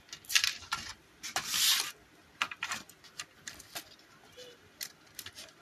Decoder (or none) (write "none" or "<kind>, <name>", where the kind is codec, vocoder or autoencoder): vocoder, BigVGAN v2